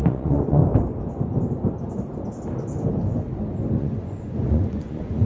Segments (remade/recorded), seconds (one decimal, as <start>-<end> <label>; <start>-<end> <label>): 0.0-0.6 remade; 0.6-3.8 recorded; 3.8-5.3 remade